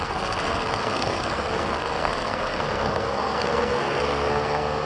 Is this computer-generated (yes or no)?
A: yes